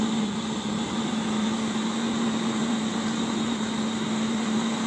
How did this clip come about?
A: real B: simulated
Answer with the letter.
A